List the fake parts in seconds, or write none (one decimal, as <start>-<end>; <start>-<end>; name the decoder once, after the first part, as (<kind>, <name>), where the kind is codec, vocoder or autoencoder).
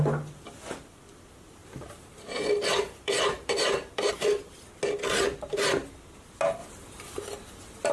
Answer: 1.6-4.1 (vocoder, BigVGAN v2); 6.6-7.9